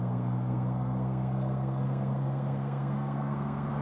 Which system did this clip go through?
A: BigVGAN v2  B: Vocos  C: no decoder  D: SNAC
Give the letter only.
D